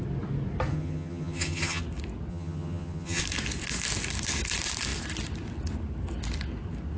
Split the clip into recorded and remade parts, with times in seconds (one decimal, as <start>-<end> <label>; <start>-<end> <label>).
0.0-0.7 recorded; 0.7-1.8 remade; 1.8-2.3 recorded; 2.3-3.2 remade; 3.2-7.0 recorded